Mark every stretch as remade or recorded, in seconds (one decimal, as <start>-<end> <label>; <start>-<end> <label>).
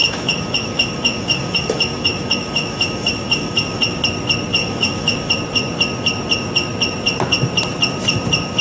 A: 0.0-4.0 remade; 4.0-4.6 recorded; 4.6-5.3 remade; 5.3-8.6 recorded